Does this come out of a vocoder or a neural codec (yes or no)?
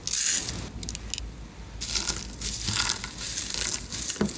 no